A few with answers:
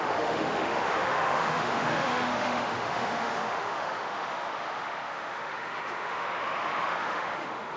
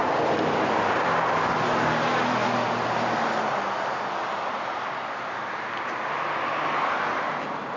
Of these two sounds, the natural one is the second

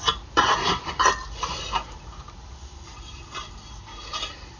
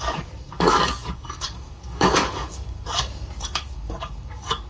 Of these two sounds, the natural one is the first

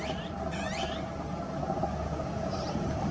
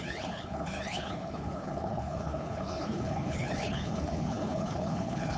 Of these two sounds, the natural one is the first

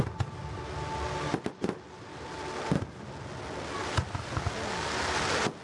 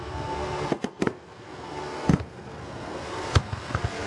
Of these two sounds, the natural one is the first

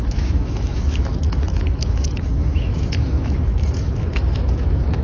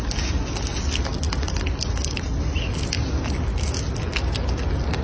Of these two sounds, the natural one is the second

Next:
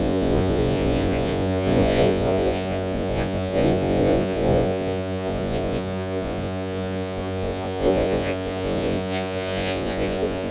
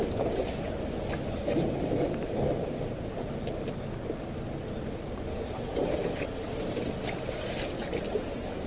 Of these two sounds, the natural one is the second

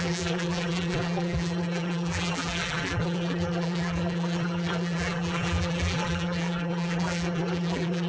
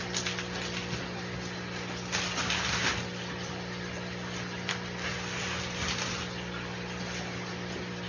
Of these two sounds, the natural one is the second